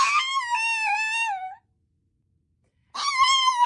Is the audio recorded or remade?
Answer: recorded